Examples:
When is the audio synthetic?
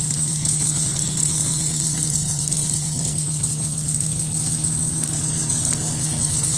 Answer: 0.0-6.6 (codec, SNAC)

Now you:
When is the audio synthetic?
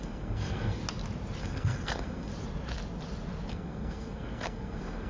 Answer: 0.0-0.8 (codec, SNAC); 1.4-2.3; 3.5-5.1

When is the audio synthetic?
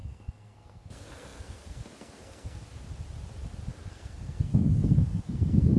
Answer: 0.0-2.6 (codec, SNAC); 3.9-5.8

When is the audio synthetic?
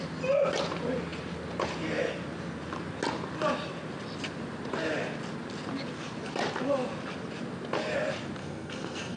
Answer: 8.4-9.2 (codec, SNAC)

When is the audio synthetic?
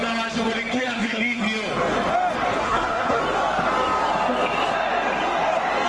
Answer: 0.7-1.4 (codec, SNAC); 2.6-3.2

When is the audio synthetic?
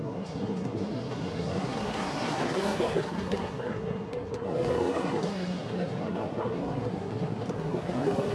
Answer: 0.0-8.3 (codec, SNAC)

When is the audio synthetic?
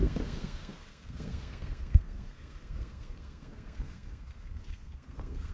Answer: 0.0-5.5 (codec, SNAC)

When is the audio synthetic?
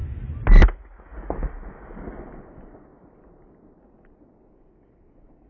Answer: none